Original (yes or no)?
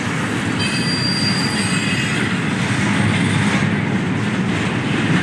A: yes